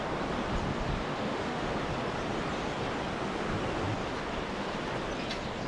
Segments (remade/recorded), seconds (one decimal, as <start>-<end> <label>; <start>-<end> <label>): 0.0-1.1 recorded; 1.1-1.7 remade; 1.7-5.7 recorded